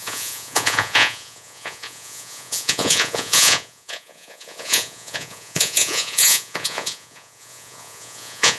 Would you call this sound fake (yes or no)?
yes